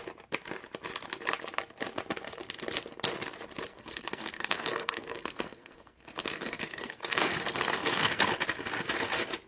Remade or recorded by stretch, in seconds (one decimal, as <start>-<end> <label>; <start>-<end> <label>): 0.0-3.7 recorded; 3.7-8.3 remade; 8.3-9.5 recorded